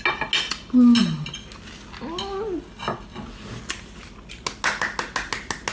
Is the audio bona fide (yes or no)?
yes